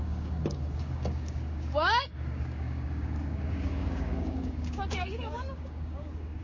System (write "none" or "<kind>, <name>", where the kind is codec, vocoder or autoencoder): codec, DAC